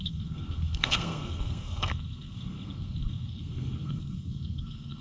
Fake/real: fake